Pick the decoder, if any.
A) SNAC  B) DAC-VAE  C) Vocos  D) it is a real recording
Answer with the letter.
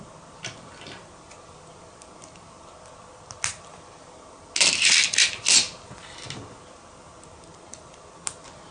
D